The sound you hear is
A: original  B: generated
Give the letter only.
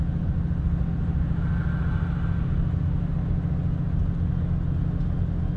A